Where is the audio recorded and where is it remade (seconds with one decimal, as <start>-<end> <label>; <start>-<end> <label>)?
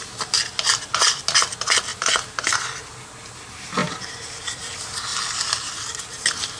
0.0-6.6 recorded